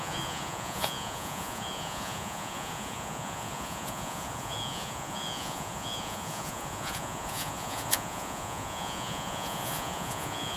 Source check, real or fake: fake